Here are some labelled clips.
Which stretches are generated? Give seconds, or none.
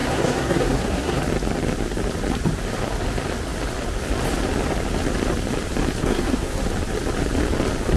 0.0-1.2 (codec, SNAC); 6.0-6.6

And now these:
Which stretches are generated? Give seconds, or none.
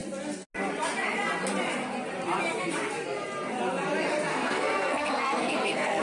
4.3-6.0 (codec, SNAC)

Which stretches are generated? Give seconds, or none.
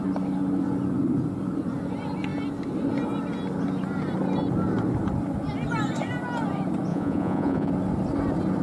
6.9-7.7 (vocoder, Vocos)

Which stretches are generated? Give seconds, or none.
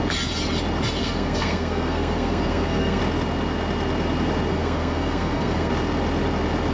1.0-3.0 (codec, SNAC); 4.5-5.7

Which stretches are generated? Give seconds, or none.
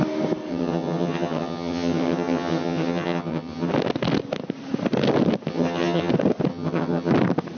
0.5-3.7 (vocoder, HiFi-GAN); 5.5-6.1; 6.5-7.1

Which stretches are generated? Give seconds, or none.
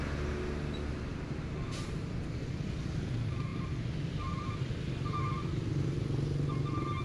1.1-2.5 (vocoder, BigVGAN v2); 3.5-5.6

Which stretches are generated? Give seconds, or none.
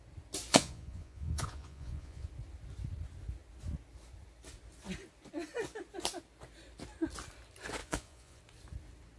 0.5-2.3 (vocoder, Vocos); 7.8-8.4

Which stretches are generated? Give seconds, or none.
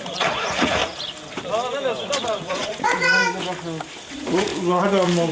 0.0-0.8 (vocoder, Vocos); 2.2-3.2; 4.1-4.5